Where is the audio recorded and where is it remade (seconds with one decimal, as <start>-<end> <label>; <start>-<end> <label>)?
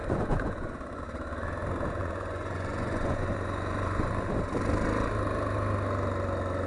0.0-1.0 remade; 1.0-2.0 recorded; 2.0-4.1 remade; 4.1-6.7 recorded